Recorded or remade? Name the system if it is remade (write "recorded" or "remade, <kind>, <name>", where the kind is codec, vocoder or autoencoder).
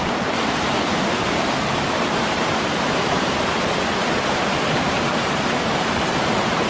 remade, vocoder, BigVGAN v2